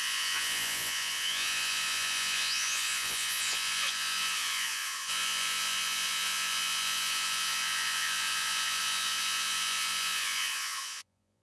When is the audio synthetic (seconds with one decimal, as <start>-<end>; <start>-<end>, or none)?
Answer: 0.0-11.4